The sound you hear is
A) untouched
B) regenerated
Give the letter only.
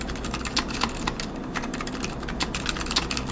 A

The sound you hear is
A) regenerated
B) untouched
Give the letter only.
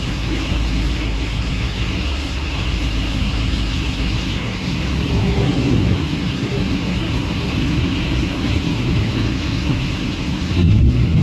A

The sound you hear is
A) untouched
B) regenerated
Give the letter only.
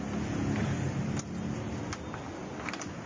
A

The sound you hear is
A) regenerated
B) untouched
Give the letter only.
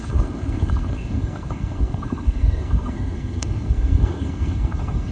A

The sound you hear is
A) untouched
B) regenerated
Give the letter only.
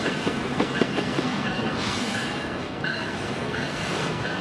B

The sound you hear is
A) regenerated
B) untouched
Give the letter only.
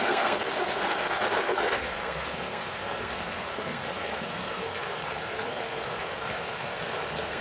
A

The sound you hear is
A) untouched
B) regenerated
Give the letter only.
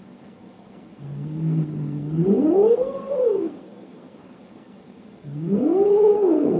B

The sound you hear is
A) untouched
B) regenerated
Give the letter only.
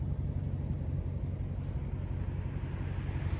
A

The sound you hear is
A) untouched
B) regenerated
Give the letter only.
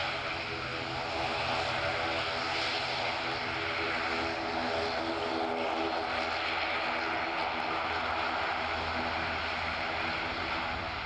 A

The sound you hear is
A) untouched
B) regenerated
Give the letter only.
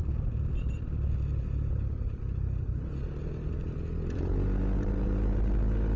A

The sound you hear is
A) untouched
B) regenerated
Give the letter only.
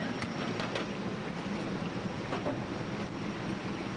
A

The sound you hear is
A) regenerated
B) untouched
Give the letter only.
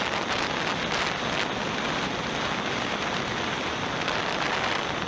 B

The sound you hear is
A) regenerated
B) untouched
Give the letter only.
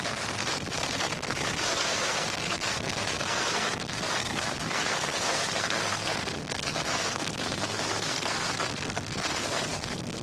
A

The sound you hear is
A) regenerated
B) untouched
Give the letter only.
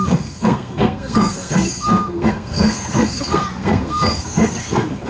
A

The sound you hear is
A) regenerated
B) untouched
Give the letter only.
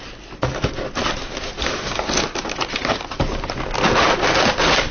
B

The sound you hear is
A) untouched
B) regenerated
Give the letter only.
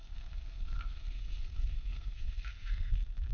B